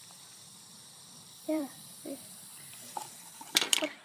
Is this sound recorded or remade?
remade